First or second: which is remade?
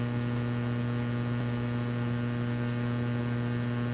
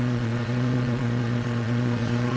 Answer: second